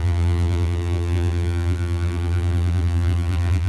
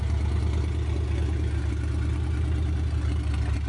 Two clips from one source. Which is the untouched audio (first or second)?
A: second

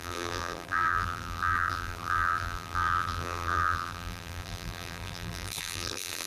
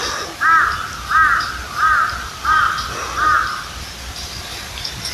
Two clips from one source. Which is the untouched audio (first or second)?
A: second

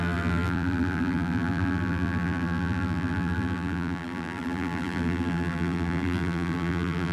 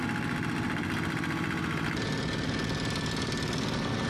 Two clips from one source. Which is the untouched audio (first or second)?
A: second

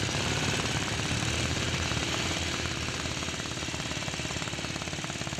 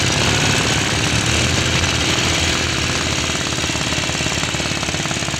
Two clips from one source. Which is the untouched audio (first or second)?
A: second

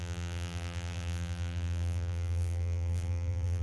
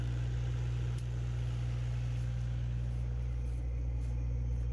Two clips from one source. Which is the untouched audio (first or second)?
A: second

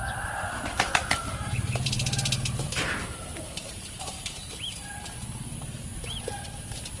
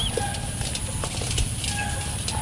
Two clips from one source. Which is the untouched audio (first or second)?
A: second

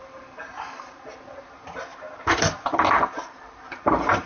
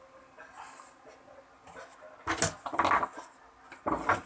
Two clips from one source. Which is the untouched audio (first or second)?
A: second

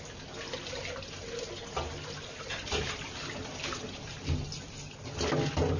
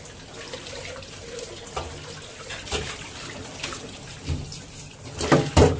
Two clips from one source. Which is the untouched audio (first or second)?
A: first